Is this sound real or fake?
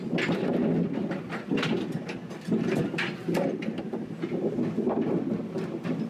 real